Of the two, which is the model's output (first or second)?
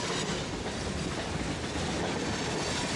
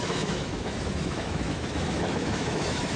second